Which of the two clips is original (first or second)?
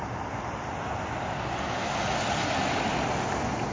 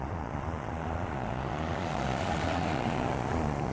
first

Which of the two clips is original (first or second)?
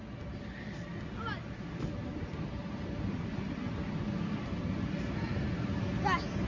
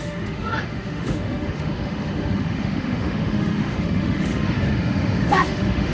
first